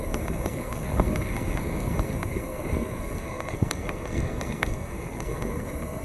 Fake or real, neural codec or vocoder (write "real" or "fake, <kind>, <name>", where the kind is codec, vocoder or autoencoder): fake, codec, SNAC